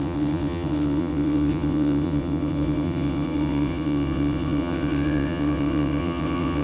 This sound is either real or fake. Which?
fake